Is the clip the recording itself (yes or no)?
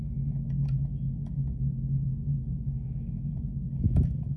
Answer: no